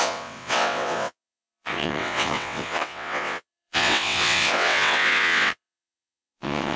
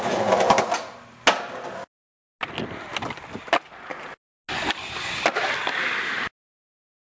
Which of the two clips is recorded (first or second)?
second